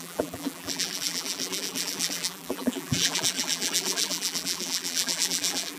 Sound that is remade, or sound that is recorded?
remade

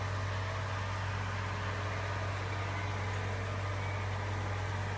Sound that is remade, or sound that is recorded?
recorded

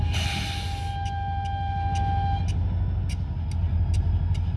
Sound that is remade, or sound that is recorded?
recorded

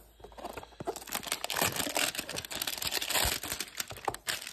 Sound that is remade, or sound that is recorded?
recorded